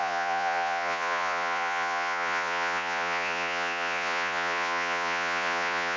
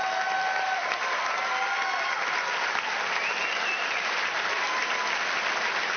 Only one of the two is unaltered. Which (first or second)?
second